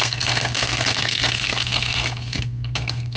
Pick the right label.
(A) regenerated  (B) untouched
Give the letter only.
A